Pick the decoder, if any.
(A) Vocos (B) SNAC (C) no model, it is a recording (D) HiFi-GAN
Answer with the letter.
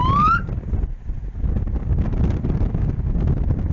C